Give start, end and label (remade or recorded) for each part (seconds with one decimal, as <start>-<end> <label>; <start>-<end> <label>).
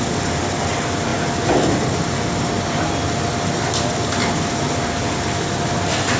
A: 0.0-6.2 recorded